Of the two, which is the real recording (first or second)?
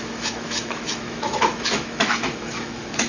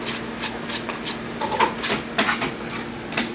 second